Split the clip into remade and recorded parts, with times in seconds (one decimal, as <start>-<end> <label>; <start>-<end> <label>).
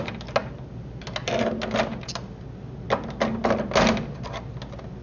0.0-5.0 recorded